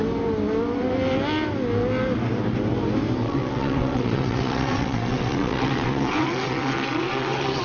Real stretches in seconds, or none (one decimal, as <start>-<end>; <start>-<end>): 0.0-3.2